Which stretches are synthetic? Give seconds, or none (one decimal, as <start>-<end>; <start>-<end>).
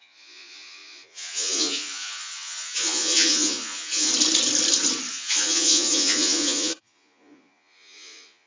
0.0-4.1; 5.1-8.5